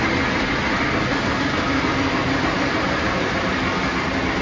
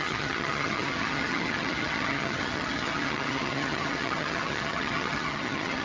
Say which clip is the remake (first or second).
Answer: second